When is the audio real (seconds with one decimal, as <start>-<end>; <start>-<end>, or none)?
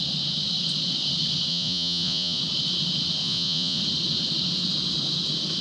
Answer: 0.0-1.5; 2.4-3.2; 3.8-5.6